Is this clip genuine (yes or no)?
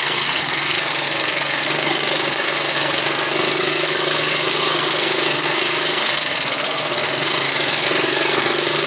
no